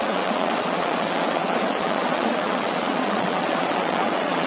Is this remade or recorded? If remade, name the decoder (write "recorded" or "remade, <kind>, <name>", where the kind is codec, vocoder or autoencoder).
remade, vocoder, Vocos